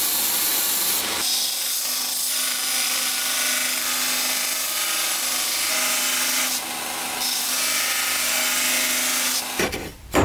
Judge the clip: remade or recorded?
recorded